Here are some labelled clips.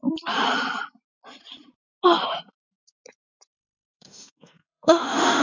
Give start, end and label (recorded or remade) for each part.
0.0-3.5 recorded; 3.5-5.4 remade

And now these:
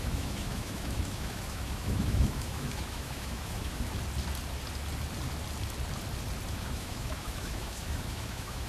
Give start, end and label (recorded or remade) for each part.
0.0-3.9 remade; 3.9-6.5 recorded; 6.5-8.7 remade

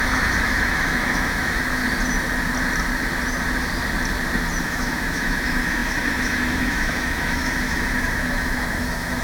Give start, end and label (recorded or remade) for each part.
0.0-1.8 remade; 1.8-4.6 recorded; 4.6-9.2 remade

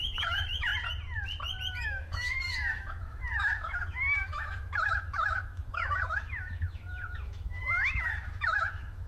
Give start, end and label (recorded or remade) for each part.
0.0-0.7 remade; 0.7-1.7 recorded; 1.7-9.1 remade

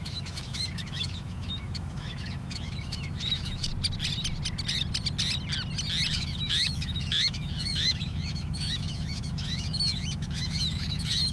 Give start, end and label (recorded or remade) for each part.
0.0-3.7 remade; 3.7-6.1 recorded; 6.1-11.3 remade